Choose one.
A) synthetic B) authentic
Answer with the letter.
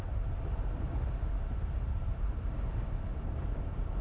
A